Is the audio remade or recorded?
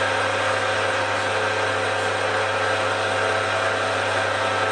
recorded